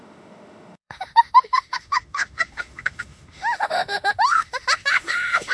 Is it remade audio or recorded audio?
remade